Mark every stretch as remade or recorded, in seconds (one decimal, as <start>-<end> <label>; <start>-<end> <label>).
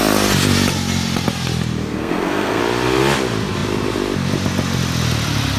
0.0-1.8 recorded; 1.8-2.6 remade; 2.6-5.6 recorded